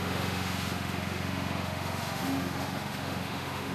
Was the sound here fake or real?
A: fake